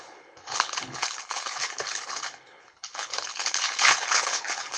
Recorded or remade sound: remade